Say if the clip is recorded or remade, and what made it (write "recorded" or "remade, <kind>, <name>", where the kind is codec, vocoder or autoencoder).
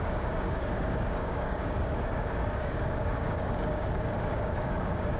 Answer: remade, codec, DAC